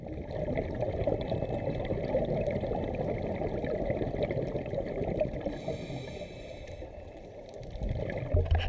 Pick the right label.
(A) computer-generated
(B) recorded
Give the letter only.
B